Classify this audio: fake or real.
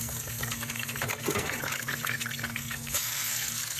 fake